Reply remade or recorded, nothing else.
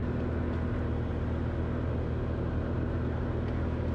recorded